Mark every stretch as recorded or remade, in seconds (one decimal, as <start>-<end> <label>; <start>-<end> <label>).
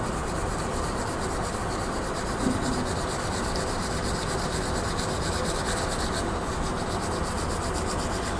0.0-8.4 recorded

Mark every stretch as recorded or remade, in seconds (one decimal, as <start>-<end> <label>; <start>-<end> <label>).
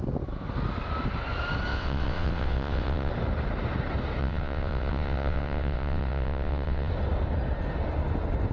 0.0-1.7 recorded; 1.7-3.1 remade; 3.1-4.2 recorded; 4.2-6.9 remade; 6.9-8.5 recorded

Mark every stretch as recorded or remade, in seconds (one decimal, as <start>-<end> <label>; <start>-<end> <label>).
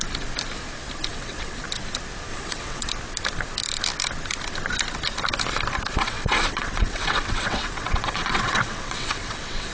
0.0-1.1 recorded; 1.1-1.6 remade; 1.6-2.3 recorded; 2.3-2.9 remade; 2.9-5.9 recorded; 5.9-9.7 remade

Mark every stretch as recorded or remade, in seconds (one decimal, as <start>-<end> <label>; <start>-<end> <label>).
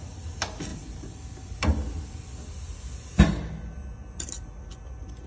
0.0-5.3 recorded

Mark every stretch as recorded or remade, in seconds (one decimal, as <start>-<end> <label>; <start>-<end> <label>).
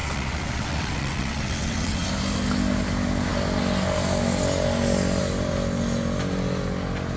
0.0-2.1 remade; 2.1-7.2 recorded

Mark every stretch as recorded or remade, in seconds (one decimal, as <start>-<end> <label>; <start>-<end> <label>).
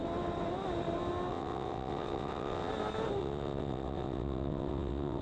0.0-1.3 recorded; 1.3-2.7 remade; 2.7-3.2 recorded; 3.2-5.2 remade